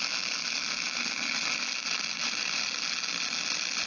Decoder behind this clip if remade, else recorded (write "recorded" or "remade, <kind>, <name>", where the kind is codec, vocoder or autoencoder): recorded